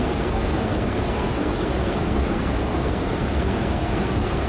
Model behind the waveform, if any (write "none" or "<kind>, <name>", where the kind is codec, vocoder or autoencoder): codec, SNAC